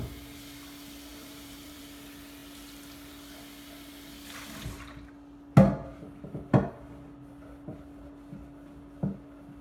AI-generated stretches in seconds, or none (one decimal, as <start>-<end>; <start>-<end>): 1.1-1.8